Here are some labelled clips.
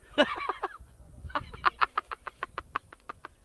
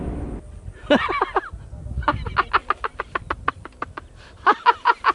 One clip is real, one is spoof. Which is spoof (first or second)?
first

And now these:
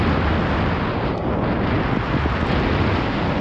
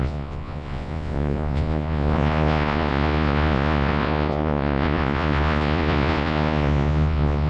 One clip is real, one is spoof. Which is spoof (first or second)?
second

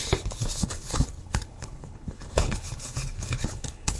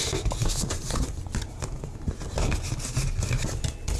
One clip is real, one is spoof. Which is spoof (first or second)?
first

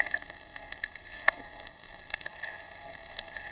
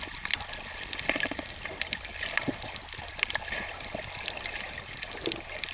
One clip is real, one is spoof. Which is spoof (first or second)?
first